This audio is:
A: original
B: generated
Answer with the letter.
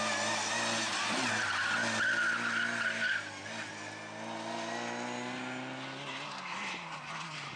A